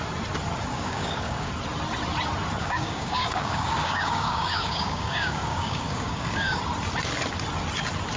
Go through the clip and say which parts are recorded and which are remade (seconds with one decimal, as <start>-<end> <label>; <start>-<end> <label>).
0.0-0.7 recorded; 0.7-1.5 remade; 1.5-2.6 recorded; 2.6-6.6 remade; 6.6-8.2 recorded